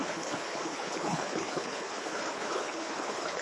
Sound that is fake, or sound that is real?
fake